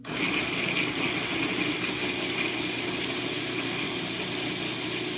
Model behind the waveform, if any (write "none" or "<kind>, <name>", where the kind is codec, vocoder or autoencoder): none